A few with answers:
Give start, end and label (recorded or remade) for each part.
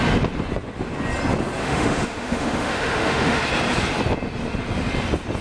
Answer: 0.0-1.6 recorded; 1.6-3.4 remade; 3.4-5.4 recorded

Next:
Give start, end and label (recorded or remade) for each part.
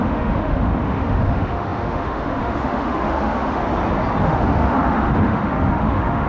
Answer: 0.0-3.6 remade; 3.6-4.2 recorded; 4.2-6.3 remade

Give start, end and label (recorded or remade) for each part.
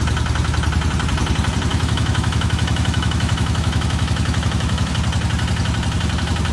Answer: 0.0-1.7 recorded; 1.7-4.9 remade; 4.9-6.5 recorded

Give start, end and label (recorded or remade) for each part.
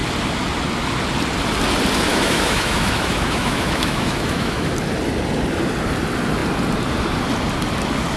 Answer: 0.0-2.1 recorded; 2.1-4.7 remade; 4.7-8.2 recorded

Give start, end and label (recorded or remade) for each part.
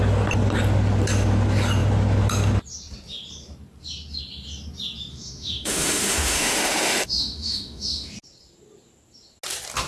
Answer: 0.0-5.1 recorded; 5.1-8.1 remade; 8.1-9.9 recorded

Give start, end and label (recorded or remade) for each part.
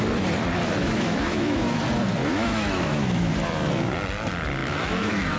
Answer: 0.0-0.8 recorded; 0.8-1.8 remade; 1.8-2.2 recorded; 2.2-3.3 remade; 3.3-4.6 recorded; 4.6-5.4 remade